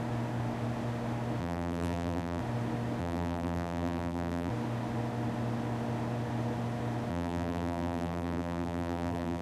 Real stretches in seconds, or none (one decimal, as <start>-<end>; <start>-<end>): 0.0-1.4; 2.4-3.0; 4.5-7.1